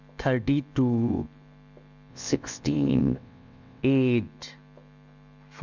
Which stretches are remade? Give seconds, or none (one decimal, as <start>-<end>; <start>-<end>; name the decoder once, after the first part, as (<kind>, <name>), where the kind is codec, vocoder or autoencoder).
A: 2.1-3.8 (vocoder, WaveNeXt)